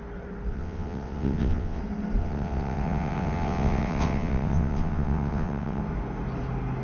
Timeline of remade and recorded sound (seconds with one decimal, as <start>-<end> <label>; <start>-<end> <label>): 0.0-0.5 recorded; 0.5-1.8 remade; 1.8-2.2 recorded; 2.2-5.8 remade; 5.8-6.8 recorded